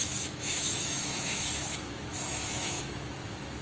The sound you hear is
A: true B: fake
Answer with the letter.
B